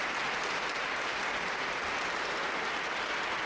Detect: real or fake real